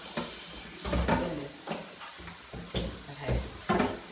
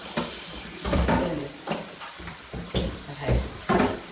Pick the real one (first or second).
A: first